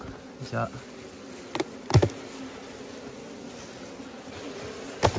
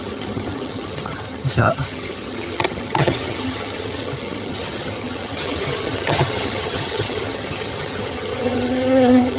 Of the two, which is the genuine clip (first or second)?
first